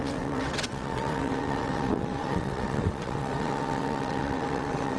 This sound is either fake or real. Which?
fake